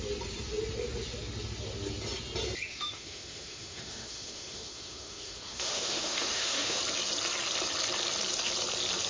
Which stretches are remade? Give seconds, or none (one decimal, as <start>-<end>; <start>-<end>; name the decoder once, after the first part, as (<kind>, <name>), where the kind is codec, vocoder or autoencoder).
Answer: 2.7-6.8 (autoencoder, DAC-VAE)